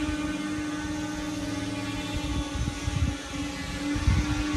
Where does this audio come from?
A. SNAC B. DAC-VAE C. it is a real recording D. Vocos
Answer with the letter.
C